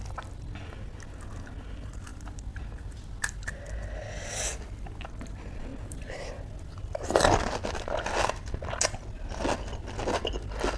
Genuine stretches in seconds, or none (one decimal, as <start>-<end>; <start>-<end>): 0.0-2.1; 3.5-5.7; 8.8-10.8